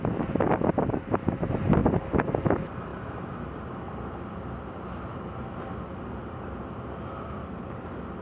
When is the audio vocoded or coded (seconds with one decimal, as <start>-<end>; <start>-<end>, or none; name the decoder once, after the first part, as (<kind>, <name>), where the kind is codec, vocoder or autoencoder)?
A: none